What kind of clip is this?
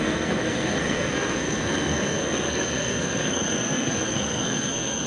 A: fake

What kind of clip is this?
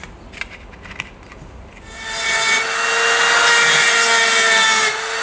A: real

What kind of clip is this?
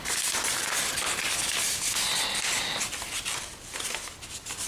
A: real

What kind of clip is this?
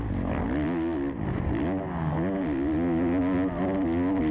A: real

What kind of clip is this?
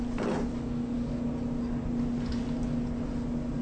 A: real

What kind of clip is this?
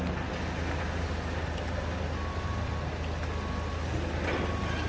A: real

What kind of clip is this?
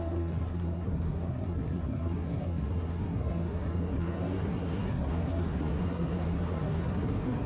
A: fake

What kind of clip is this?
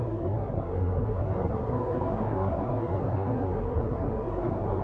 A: fake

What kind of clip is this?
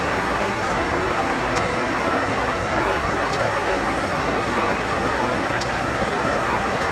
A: fake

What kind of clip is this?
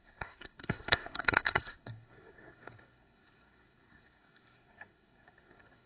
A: fake